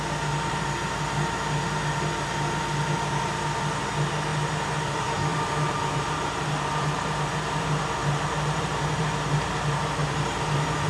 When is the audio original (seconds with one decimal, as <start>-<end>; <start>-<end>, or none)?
0.0-4.3; 4.8-5.3; 7.3-8.0; 9.0-10.0